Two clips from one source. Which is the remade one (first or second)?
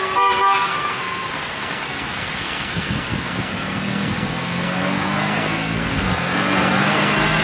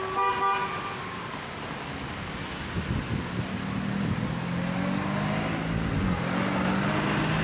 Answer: first